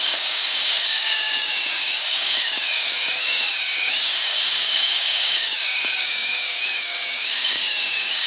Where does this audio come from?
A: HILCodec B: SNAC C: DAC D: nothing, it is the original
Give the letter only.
C